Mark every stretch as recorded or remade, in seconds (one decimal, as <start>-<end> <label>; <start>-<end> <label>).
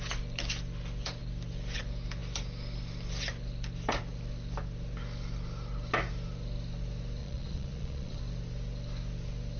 0.0-7.2 recorded; 7.2-8.2 remade; 8.2-9.6 recorded